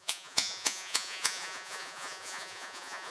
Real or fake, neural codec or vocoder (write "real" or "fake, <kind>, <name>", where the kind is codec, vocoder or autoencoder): fake, vocoder, Vocos